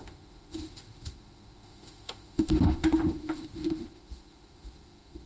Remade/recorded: remade